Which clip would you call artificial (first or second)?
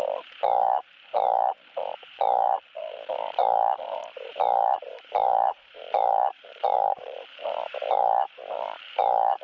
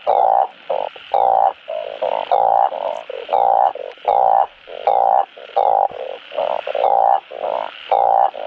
first